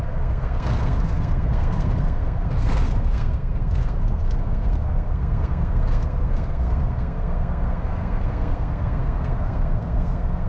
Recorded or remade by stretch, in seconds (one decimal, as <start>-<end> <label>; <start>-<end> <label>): 0.0-10.5 remade